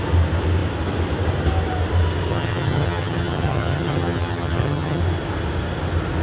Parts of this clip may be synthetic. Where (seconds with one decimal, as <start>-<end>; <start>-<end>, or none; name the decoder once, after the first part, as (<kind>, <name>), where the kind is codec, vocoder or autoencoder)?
2.3-5.0 (vocoder, HiFi-GAN)

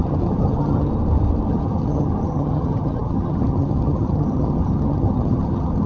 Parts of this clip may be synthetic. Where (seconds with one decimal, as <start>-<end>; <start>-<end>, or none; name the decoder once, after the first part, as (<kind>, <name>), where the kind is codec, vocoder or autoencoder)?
0.0-0.9 (vocoder, HiFi-GAN); 1.5-5.9

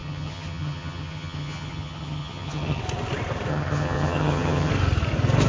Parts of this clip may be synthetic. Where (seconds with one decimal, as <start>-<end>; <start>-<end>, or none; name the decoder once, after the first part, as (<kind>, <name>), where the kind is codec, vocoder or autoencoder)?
0.0-2.8 (vocoder, HiFi-GAN); 3.5-4.7

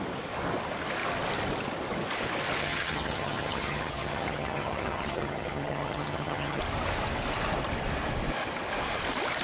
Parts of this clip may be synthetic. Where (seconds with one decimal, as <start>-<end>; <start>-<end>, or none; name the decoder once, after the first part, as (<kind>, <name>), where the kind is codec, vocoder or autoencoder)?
2.6-6.6 (vocoder, HiFi-GAN)

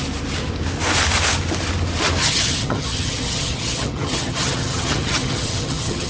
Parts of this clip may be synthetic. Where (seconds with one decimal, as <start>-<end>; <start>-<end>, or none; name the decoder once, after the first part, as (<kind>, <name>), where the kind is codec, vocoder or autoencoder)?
2.2-6.1 (vocoder, HiFi-GAN)

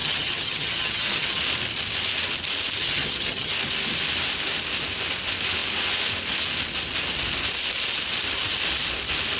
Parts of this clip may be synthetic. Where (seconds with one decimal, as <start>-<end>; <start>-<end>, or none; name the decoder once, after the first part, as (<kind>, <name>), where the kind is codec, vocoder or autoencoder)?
0.0-1.4 (vocoder, HiFi-GAN); 2.8-3.5

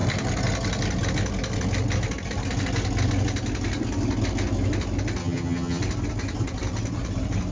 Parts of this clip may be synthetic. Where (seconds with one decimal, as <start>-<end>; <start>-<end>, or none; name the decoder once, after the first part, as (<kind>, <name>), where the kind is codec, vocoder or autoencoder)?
5.2-5.8 (vocoder, HiFi-GAN)